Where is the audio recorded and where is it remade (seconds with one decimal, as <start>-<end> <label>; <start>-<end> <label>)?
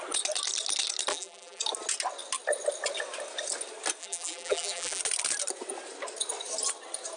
0.0-1.1 recorded; 1.1-1.6 remade; 1.6-4.0 recorded; 4.0-5.0 remade; 5.0-7.2 recorded